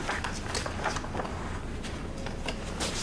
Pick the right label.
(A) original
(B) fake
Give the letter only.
A